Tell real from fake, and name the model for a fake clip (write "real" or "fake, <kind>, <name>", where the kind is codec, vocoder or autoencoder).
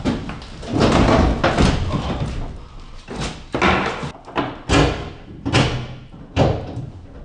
real